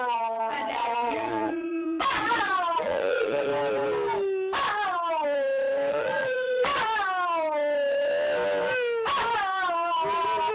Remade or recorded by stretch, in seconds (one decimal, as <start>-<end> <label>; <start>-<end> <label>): 0.0-3.5 remade; 3.5-5.9 recorded; 5.9-6.7 remade; 6.7-10.5 recorded